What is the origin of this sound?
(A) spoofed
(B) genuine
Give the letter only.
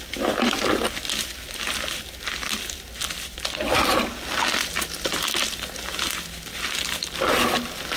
B